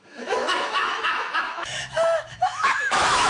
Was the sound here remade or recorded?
remade